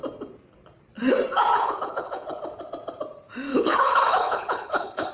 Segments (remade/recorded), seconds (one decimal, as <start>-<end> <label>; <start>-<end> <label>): 0.0-1.6 recorded; 1.6-2.4 remade; 2.4-3.5 recorded; 3.5-5.1 remade